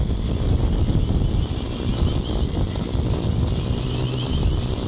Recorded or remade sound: recorded